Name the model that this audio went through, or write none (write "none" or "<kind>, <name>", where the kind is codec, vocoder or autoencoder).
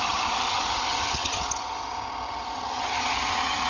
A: vocoder, HiFi-GAN